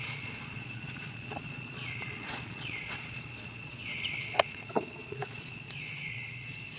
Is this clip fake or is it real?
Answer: fake